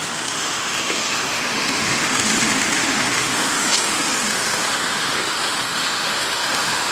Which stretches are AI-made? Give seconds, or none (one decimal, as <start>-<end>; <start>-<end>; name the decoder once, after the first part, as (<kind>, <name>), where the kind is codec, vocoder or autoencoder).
0.0-6.9 (autoencoder, DAC-VAE)